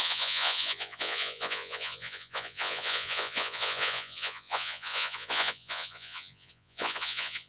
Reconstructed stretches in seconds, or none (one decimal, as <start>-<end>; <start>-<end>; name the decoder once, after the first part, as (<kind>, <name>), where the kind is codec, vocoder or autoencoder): 0.0-7.5 (vocoder, Vocos)